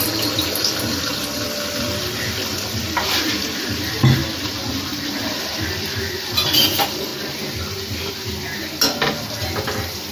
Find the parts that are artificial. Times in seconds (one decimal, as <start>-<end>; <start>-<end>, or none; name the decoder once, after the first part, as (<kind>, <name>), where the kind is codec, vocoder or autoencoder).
0.0-4.2 (vocoder, BigVGAN v2); 4.7-7.1; 9.4-10.1